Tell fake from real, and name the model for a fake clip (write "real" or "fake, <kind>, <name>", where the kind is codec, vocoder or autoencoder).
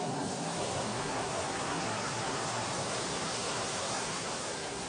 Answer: fake, codec, SNAC